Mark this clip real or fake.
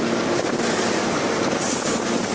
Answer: real